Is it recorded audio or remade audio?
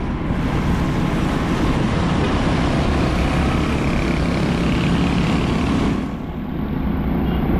recorded